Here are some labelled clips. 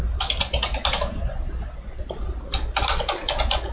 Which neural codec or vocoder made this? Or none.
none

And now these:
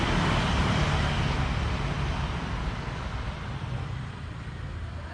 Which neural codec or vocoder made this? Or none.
vocoder, BigVGAN v2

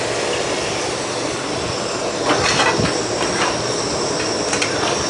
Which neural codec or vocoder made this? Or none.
none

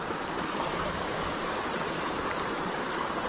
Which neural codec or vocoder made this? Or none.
none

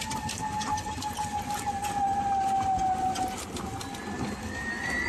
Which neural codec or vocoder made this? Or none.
none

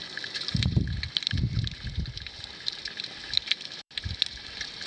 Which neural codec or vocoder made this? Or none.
none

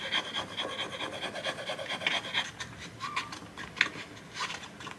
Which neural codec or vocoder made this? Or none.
none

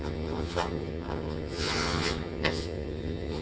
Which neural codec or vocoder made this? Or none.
vocoder, HiFi-GAN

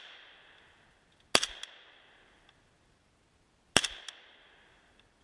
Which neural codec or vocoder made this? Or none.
none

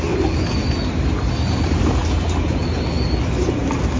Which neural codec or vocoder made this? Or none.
none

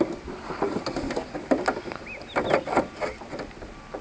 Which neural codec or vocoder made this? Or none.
none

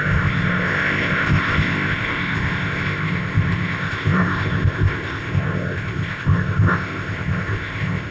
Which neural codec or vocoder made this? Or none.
codec, ZipCodec